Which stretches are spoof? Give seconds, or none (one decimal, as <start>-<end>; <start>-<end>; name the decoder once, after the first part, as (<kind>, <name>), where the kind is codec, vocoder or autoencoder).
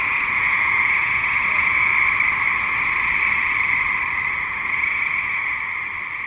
0.0-1.9 (vocoder, Vocos); 4.4-5.5